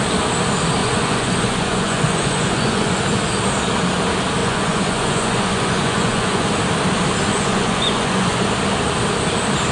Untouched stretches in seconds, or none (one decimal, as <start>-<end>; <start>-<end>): 0.0-0.8; 3.0-4.4; 6.5-7.3; 8.5-9.7